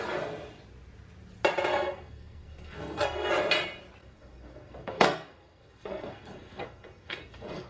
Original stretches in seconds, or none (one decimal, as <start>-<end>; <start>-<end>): 0.0-1.7; 3.3-4.0